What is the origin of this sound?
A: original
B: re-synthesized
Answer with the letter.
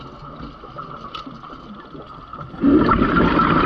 A